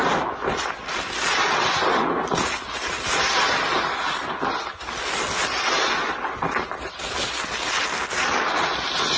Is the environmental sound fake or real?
real